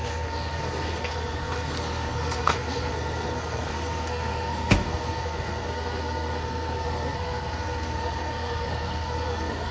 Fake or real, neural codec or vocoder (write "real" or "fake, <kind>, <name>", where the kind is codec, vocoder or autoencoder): fake, codec, SNAC